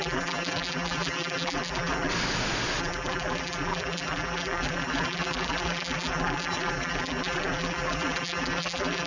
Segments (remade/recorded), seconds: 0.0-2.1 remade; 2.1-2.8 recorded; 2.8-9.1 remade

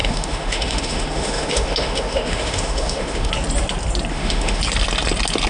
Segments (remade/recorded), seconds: 0.0-3.3 remade; 3.3-4.1 recorded; 4.1-4.6 remade; 4.6-5.5 recorded